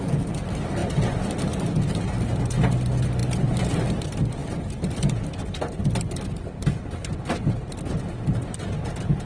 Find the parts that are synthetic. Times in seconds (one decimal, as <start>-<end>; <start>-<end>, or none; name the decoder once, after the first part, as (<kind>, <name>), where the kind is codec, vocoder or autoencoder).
none

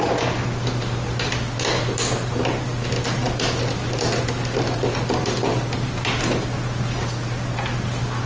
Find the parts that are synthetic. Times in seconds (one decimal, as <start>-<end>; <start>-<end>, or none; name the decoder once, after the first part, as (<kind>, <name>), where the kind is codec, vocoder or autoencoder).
none

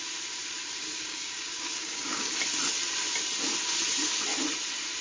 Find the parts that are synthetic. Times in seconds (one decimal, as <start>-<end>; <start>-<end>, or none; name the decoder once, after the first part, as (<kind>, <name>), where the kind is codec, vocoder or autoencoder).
0.9-2.4 (codec, DAC)